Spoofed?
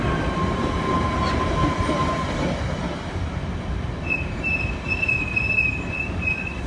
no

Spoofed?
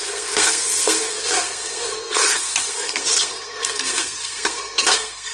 yes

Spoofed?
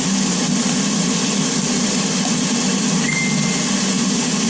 no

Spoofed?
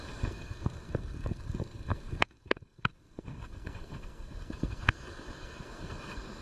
yes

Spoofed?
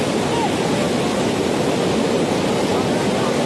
no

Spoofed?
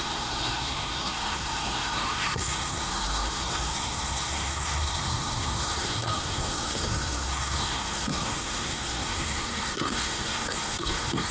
yes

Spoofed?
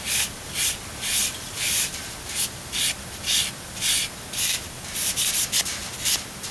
no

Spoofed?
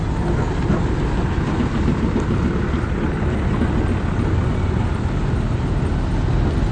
no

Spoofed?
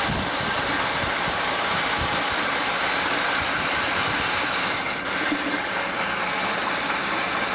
no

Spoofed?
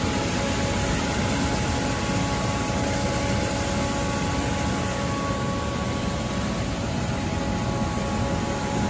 no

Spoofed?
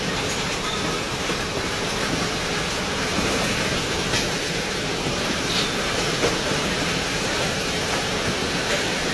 no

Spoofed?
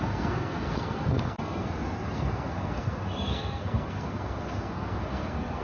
yes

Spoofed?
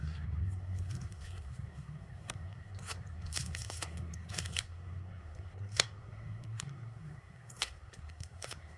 yes